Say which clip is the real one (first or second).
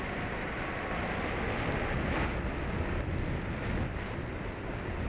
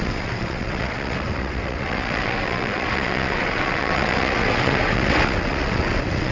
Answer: first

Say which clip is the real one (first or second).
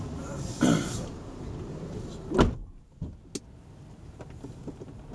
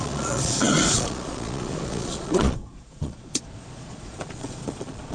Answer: first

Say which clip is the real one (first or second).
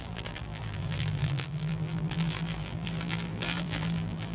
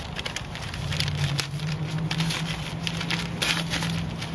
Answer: second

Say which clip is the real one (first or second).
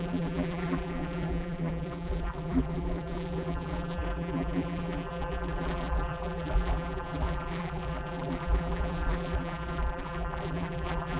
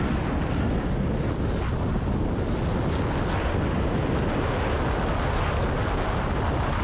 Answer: second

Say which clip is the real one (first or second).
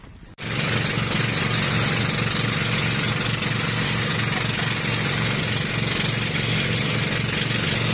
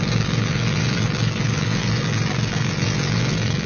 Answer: first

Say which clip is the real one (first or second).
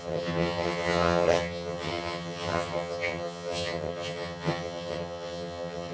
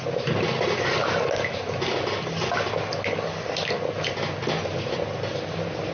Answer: second